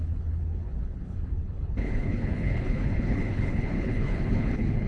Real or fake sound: fake